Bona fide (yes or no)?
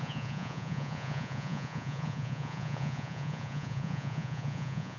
no